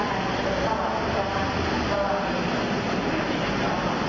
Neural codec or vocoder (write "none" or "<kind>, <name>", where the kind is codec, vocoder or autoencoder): none